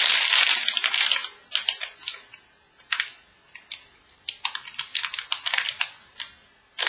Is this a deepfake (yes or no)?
no